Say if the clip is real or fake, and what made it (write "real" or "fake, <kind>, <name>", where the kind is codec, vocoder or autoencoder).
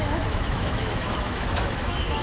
fake, autoencoder, DAC-VAE